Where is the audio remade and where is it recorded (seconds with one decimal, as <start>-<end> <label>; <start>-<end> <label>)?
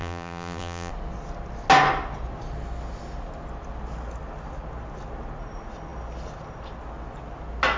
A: 0.0-0.9 remade; 0.9-7.8 recorded